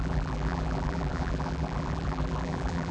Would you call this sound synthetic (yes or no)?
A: yes